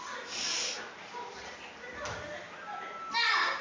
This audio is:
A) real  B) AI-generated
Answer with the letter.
A